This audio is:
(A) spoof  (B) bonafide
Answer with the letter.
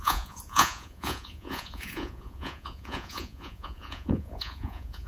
A